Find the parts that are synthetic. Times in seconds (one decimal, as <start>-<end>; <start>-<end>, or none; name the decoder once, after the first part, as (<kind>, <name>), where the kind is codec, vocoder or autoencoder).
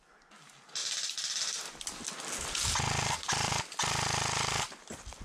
none